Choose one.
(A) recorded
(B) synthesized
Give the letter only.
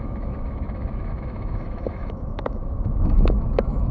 B